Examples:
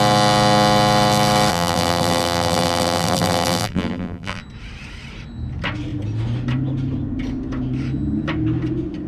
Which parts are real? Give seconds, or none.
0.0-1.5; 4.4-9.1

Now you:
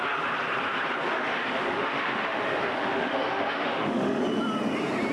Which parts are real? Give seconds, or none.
0.0-1.1; 4.2-5.1

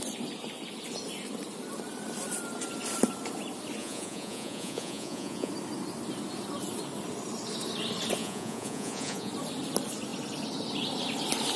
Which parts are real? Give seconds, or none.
0.0-3.8; 5.5-8.2; 9.3-11.6

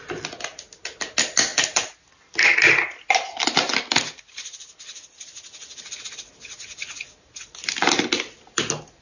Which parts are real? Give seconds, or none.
0.0-9.0

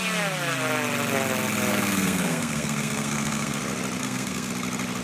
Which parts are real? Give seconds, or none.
0.0-1.7; 3.6-4.0; 4.5-5.0

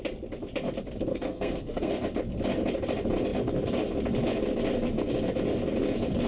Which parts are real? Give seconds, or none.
0.0-1.1; 1.9-6.3

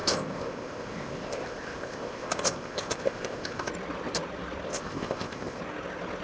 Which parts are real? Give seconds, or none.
3.7-4.7; 5.6-6.2

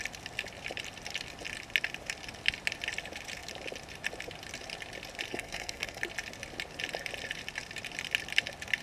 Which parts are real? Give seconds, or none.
0.0-5.3; 6.0-8.8